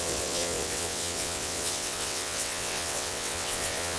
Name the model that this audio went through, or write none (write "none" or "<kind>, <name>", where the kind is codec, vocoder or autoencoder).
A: vocoder, WaveNeXt